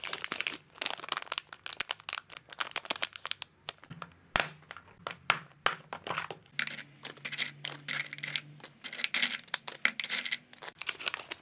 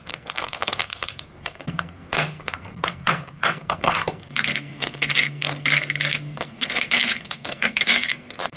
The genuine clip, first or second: first